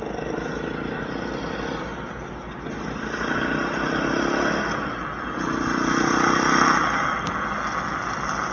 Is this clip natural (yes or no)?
yes